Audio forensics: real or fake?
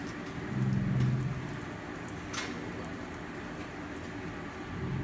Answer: real